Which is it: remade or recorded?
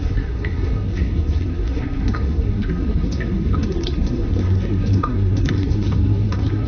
remade